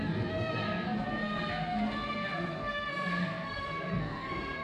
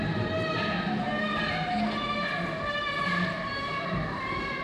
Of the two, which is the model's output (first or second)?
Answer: first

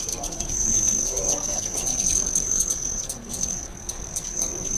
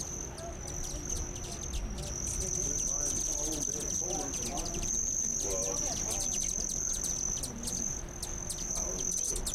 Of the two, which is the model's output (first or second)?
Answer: first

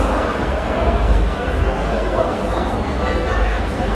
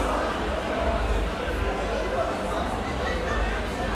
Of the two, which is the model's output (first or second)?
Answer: first